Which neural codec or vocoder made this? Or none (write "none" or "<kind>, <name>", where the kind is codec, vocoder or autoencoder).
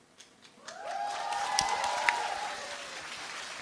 none